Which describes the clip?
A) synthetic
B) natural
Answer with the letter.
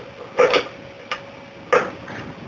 B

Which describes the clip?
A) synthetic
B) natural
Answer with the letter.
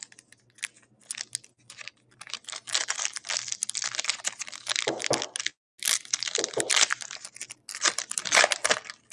B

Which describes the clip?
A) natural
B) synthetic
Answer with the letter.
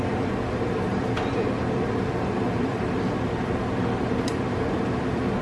B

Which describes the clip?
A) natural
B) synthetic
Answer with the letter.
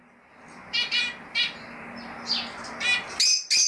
A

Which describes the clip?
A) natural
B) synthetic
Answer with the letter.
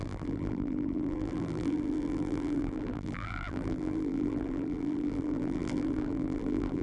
B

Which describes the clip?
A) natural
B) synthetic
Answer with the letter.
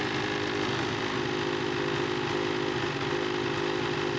A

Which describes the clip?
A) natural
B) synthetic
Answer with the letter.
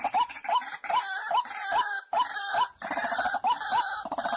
A